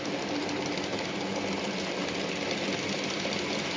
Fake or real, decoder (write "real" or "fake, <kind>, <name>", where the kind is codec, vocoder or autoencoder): real